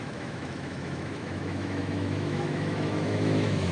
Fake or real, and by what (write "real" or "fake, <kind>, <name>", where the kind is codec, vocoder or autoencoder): fake, autoencoder, DAC-VAE